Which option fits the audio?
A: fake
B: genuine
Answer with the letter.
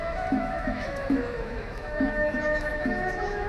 A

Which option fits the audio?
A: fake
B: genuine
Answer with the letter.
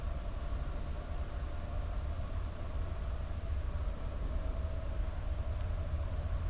B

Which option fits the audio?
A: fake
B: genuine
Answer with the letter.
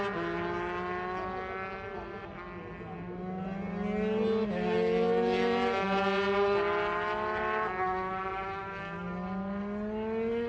B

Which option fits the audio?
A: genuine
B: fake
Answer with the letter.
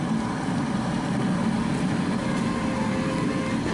A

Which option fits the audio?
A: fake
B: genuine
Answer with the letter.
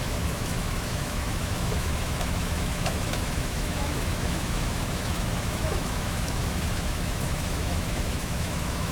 A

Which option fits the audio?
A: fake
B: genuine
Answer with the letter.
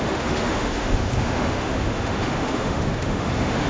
A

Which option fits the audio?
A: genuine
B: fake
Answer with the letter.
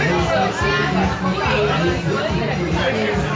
A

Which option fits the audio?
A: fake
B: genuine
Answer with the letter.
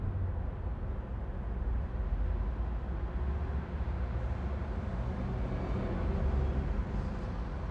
B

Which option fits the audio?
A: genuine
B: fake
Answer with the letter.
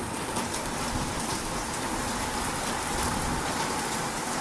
A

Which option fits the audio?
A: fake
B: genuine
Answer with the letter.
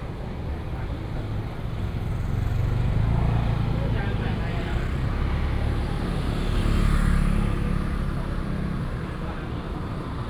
B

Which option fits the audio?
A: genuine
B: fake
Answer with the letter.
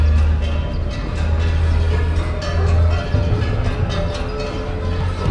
A